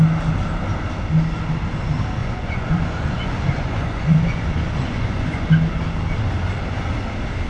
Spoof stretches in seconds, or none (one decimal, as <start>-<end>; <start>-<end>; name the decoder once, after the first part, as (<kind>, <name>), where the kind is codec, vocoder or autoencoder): 2.2-5.5 (vocoder, Vocos)

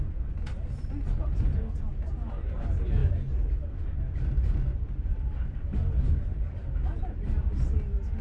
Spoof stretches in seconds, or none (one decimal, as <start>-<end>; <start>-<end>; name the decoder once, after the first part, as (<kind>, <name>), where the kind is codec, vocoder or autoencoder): none

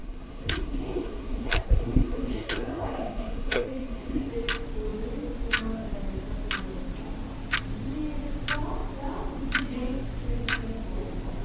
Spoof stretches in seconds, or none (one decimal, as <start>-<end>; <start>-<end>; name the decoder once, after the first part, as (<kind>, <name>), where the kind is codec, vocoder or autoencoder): 0.0-4.3 (codec, SNAC)

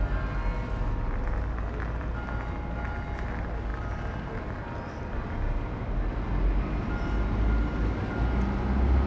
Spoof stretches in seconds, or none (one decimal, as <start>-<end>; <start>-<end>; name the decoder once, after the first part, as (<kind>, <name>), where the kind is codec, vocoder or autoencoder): none

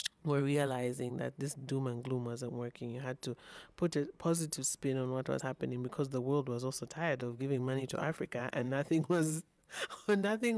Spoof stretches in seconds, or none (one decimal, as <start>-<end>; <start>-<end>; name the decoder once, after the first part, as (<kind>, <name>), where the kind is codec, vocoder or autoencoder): 0.0-1.1 (vocoder, WaveNeXt); 7.2-10.6

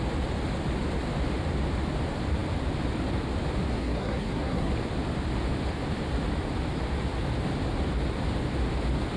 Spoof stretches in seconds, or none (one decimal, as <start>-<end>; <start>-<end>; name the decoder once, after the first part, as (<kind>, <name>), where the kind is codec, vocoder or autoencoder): 3.7-4.7 (codec, SNAC)

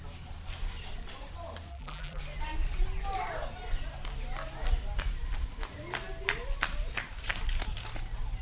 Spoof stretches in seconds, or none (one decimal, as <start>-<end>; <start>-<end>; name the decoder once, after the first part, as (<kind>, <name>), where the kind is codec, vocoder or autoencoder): 1.7-2.2 (vocoder, BigVGAN v2)

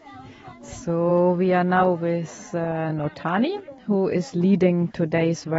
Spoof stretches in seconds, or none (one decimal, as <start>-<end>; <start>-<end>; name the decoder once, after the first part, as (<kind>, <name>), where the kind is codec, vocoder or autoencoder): 0.0-5.6 (autoencoder, DAC-VAE)